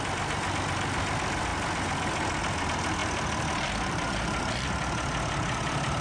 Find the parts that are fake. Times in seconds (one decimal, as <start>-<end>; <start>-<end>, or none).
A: none